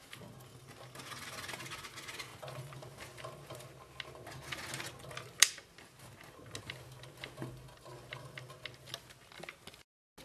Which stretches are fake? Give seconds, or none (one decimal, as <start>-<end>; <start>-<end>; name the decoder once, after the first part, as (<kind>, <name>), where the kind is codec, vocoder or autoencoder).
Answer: none